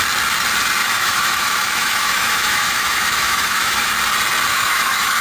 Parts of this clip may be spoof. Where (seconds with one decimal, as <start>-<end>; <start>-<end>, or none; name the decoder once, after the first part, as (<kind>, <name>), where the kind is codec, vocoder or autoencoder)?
0.8-3.9 (autoencoder, DAC-VAE); 4.5-5.2

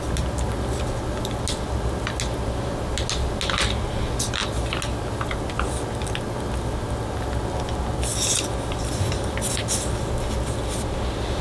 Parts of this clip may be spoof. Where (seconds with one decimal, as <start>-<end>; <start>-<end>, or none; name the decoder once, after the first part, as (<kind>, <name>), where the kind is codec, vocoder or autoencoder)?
none

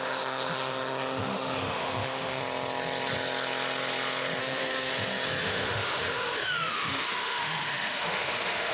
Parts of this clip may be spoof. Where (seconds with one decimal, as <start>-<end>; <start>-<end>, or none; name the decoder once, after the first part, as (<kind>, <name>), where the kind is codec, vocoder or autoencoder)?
0.0-2.4 (autoencoder, DAC-VAE); 4.4-4.9; 5.4-8.7

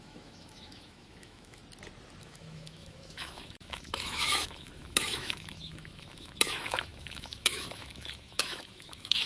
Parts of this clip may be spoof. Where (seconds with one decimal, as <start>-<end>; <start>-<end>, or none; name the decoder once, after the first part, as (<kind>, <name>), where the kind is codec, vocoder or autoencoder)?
0.0-1.6 (autoencoder, DAC-VAE); 2.2-9.3

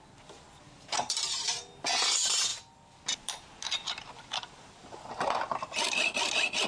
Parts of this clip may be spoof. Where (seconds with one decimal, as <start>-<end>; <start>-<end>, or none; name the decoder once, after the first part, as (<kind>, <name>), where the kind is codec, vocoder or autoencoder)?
none